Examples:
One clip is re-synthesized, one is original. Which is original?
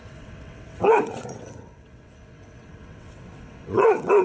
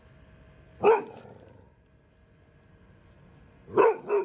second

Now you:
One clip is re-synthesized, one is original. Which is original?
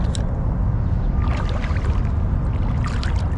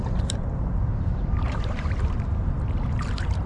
first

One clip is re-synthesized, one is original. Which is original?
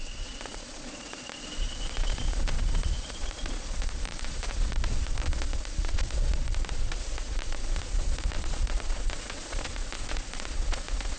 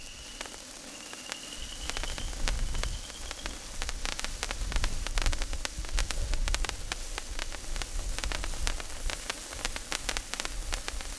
second